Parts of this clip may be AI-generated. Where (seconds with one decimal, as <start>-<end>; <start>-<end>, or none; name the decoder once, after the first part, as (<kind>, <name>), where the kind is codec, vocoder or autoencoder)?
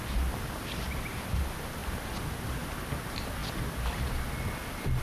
none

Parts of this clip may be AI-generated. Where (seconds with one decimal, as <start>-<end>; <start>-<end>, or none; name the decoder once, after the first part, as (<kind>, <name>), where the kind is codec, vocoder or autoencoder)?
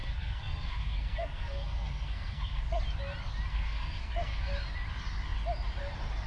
0.0-2.8 (codec, SNAC); 3.5-4.5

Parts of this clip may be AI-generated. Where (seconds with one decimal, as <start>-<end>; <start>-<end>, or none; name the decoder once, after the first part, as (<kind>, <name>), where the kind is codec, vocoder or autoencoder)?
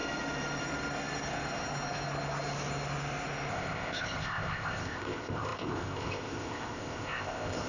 3.5-7.7 (codec, ZipCodec)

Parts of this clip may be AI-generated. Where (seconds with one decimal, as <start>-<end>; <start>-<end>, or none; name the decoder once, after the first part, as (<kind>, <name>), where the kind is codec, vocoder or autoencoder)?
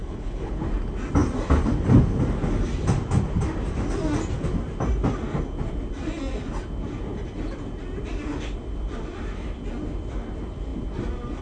0.0-0.6 (codec, HILCodec)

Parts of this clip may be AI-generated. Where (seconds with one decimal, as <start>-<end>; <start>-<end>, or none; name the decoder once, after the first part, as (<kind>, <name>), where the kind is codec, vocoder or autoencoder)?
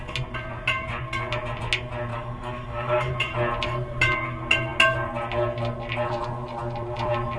2.1-3.1 (codec, DAC)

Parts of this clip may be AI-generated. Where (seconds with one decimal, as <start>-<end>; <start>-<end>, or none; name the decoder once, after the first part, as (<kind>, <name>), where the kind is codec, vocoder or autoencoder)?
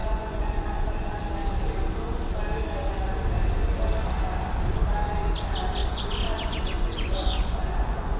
0.0-1.2 (vocoder, Vocos); 5.8-8.2